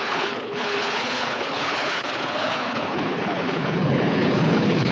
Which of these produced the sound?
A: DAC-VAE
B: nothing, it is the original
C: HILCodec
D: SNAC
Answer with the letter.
C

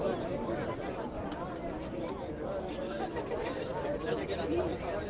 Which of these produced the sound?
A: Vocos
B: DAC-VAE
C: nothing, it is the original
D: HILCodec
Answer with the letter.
C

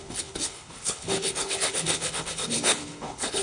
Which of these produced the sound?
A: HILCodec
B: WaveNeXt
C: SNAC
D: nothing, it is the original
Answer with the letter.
A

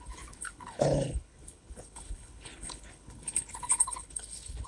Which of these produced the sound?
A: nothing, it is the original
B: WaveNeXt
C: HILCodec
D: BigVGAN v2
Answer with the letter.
C